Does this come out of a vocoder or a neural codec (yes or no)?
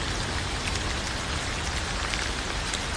no